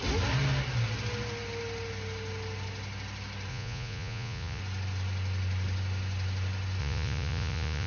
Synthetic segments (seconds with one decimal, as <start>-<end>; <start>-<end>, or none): 3.5-4.6; 6.8-7.9